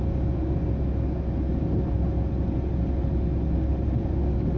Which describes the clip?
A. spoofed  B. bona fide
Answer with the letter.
B